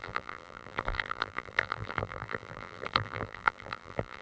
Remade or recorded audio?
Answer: remade